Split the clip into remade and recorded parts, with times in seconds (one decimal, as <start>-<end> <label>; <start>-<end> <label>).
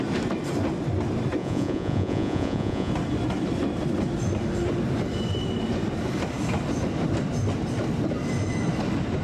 0.0-1.4 recorded; 1.4-2.9 remade; 2.9-9.2 recorded